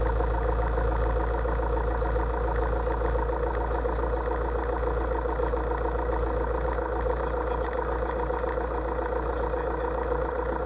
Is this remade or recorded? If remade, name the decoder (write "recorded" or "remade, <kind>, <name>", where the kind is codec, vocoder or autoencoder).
recorded